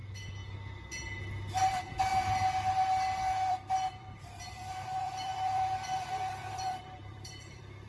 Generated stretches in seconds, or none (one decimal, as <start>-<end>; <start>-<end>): 1.7-2.1; 3.5-7.9